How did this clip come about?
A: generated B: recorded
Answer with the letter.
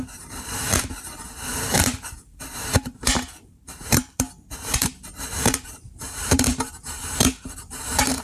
A